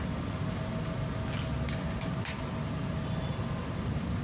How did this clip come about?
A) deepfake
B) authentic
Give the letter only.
B